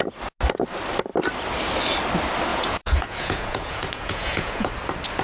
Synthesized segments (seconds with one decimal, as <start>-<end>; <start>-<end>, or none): 2.5-4.7